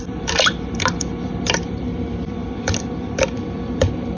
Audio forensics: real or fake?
fake